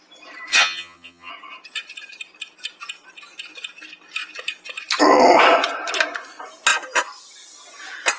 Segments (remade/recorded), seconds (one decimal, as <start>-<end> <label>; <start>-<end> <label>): 0.0-0.5 recorded; 0.5-1.3 remade; 1.3-8.2 recorded